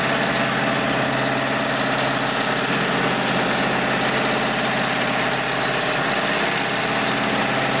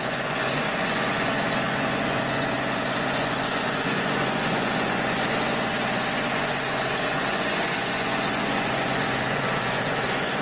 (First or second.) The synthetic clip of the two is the second